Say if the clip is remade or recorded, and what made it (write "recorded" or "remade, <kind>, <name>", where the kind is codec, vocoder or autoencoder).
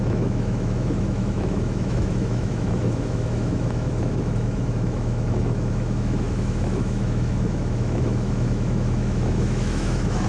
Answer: remade, autoencoder, DAC-VAE